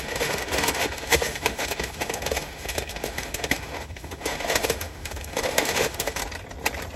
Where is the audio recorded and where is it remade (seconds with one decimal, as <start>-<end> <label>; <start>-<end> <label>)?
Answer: 0.0-6.2 remade; 6.2-7.0 recorded